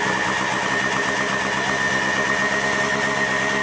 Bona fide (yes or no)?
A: yes